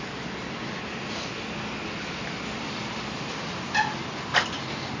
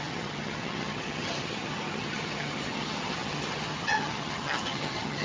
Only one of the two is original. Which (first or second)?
first